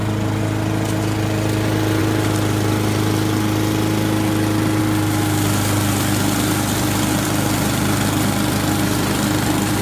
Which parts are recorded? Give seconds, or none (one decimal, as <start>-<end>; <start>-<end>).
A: 0.0-9.8